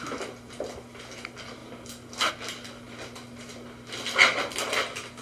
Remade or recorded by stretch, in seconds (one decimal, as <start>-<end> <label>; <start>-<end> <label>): 0.0-5.2 recorded

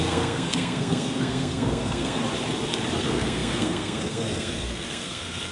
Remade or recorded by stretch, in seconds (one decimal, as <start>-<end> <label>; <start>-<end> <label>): 0.0-2.2 remade; 2.2-3.0 recorded; 3.0-5.5 remade

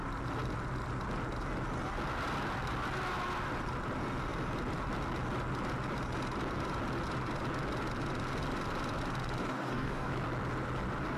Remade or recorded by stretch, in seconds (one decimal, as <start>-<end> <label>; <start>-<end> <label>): 0.0-9.4 recorded; 9.4-10.1 remade; 10.1-11.2 recorded

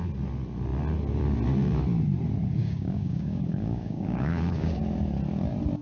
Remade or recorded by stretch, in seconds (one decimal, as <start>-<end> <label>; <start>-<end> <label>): 0.0-2.6 recorded; 2.6-4.8 remade; 4.8-5.8 recorded

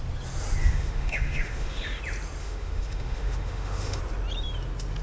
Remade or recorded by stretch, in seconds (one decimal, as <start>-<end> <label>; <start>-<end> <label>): 0.0-0.6 recorded; 0.6-2.0 remade; 2.0-2.4 recorded; 2.4-4.0 remade; 4.0-5.0 recorded

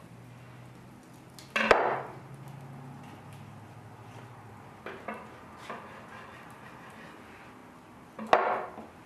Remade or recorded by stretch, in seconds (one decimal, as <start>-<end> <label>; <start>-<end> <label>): 0.0-9.1 recorded

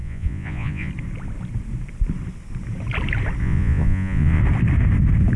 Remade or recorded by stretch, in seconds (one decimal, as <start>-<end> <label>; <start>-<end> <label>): 0.0-0.9 remade; 0.9-3.4 recorded; 3.4-4.4 remade; 4.4-5.4 recorded

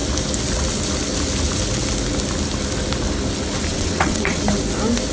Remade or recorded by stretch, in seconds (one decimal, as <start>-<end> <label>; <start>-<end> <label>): 0.0-3.7 recorded; 3.7-4.4 remade; 4.4-5.1 recorded